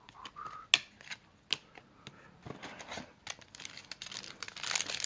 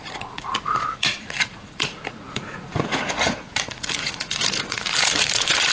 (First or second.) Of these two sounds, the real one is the first